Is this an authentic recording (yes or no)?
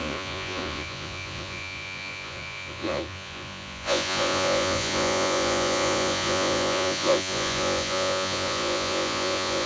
no